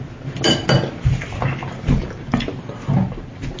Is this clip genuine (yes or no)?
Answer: yes